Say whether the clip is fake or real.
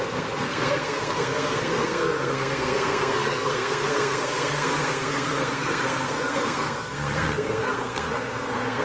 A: fake